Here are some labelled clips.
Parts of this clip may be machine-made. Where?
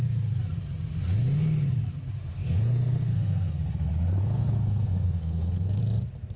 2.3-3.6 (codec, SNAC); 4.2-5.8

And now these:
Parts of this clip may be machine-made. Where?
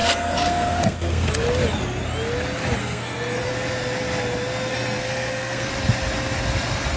0.0-1.3 (codec, SNAC); 2.8-3.5; 4.7-5.7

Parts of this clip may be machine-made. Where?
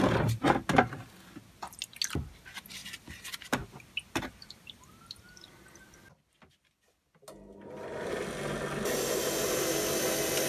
none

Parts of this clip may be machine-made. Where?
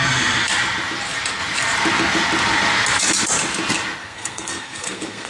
4.0-5.3 (codec, SNAC)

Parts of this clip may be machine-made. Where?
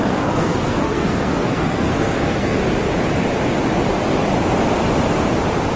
0.0-2.6 (codec, SNAC)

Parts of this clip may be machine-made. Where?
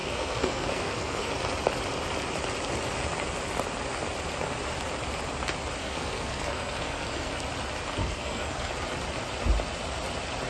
0.0-1.3 (codec, SNAC); 5.8-7.4; 8.0-8.7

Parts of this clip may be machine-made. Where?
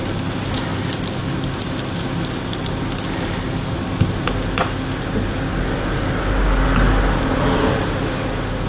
none